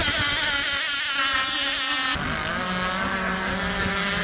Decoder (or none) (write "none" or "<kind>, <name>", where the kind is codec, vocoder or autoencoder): none